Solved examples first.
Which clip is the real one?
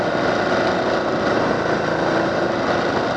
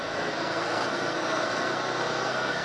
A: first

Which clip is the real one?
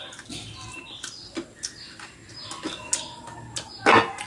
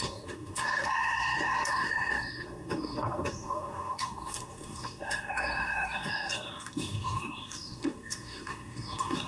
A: first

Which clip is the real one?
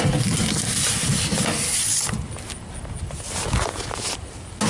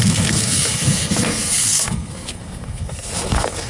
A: first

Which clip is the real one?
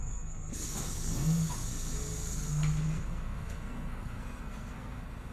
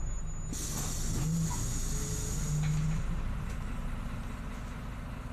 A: second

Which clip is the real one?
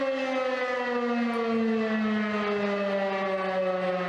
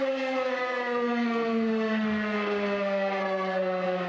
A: first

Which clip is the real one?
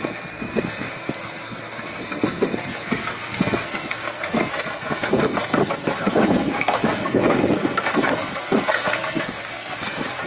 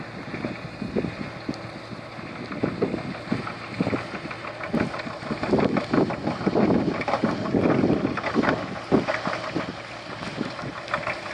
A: second